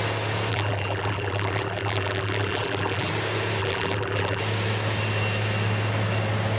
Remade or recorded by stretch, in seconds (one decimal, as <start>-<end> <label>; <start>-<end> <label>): 0.0-0.5 recorded; 0.5-3.1 remade; 3.1-3.6 recorded; 3.6-4.4 remade; 4.4-6.6 recorded